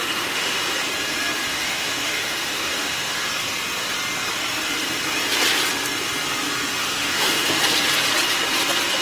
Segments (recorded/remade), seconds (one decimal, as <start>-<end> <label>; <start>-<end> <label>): 0.0-0.6 remade; 0.6-1.5 recorded; 1.5-3.3 remade; 3.3-6.8 recorded; 6.8-7.6 remade; 7.6-9.0 recorded